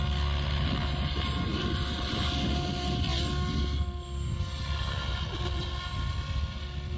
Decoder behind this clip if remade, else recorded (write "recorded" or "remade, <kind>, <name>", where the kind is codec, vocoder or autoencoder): recorded